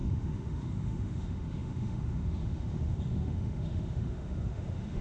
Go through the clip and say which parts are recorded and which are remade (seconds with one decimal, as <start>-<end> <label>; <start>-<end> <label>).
0.0-5.0 remade